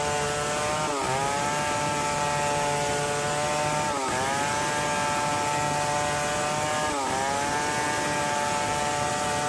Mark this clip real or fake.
real